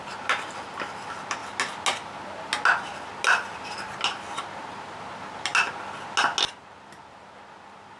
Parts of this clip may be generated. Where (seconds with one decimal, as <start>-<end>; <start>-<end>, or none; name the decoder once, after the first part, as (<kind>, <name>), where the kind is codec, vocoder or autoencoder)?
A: none